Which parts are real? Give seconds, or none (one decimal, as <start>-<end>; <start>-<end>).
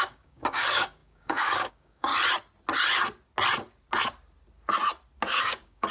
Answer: 2.1-5.4